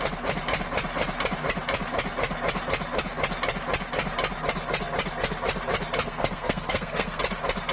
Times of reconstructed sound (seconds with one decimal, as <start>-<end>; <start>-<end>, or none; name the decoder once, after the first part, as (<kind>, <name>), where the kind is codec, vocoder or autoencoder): 6.0-7.2 (codec, SNAC)